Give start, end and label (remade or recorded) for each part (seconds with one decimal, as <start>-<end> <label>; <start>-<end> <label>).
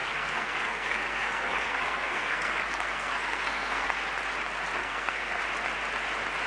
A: 0.0-3.9 remade; 3.9-4.8 recorded; 4.8-5.4 remade; 5.4-6.5 recorded